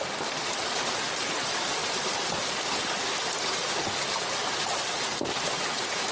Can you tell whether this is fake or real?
real